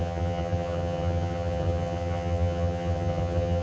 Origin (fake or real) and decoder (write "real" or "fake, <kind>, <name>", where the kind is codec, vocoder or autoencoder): fake, vocoder, HiFi-GAN